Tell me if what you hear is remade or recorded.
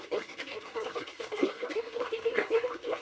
remade